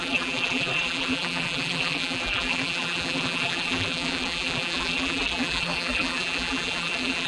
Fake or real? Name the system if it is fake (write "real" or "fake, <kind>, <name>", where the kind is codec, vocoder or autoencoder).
fake, vocoder, BigVGAN v2